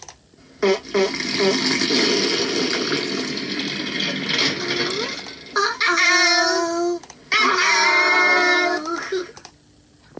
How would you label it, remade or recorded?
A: recorded